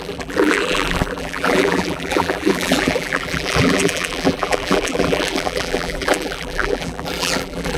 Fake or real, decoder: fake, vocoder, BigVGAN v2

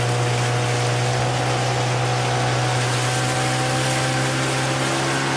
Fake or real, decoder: real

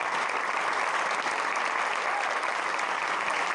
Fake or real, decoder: real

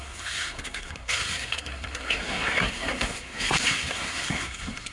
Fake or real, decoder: fake, codec, SNAC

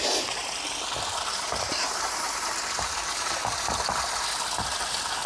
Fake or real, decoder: real